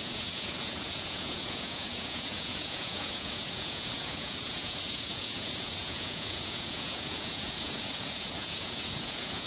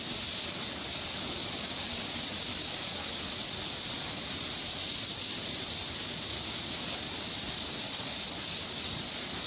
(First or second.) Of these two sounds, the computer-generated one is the first